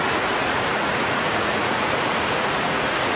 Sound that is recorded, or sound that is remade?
remade